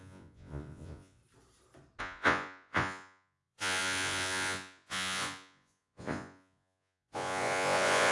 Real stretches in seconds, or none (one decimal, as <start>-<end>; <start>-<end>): 1.2-2.0